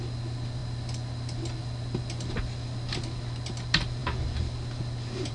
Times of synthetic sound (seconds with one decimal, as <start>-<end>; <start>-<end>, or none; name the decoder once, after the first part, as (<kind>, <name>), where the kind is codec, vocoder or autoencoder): none